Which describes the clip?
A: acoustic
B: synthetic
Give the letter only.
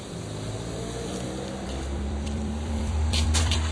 B